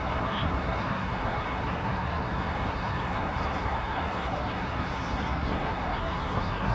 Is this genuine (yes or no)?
no